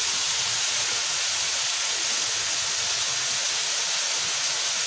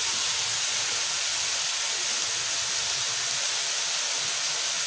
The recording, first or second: second